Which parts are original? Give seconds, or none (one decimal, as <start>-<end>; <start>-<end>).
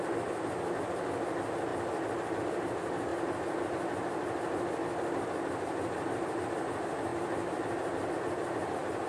0.0-9.1